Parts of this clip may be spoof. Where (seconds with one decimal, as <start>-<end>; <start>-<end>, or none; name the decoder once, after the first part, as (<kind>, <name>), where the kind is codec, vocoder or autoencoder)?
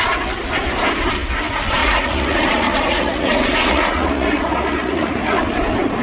1.8-5.4 (vocoder, Vocos)